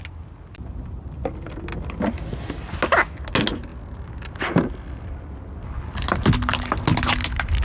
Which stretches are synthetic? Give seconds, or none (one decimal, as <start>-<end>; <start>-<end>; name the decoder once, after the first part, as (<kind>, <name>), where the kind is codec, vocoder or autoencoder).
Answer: none